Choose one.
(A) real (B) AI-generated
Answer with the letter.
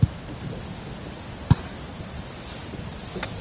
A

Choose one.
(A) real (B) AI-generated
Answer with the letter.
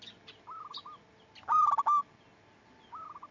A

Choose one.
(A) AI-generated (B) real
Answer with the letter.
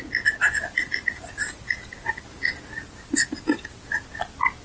B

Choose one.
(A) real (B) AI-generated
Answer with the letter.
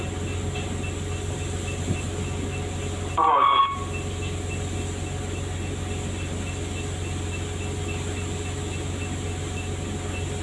A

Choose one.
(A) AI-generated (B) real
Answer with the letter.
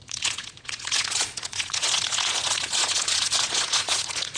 A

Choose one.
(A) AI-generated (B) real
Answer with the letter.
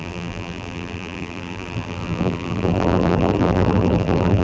A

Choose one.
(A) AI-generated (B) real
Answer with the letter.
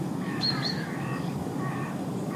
A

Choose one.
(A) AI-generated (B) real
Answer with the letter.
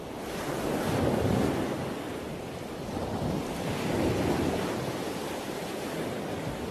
B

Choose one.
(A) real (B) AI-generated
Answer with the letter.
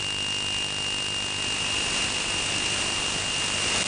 A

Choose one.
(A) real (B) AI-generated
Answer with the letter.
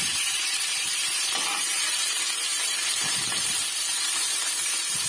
B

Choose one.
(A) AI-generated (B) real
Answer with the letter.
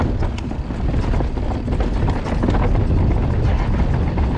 B